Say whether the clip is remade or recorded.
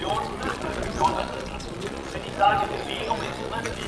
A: remade